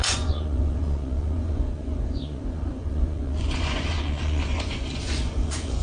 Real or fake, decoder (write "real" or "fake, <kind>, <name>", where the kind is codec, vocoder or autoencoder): fake, vocoder, Vocos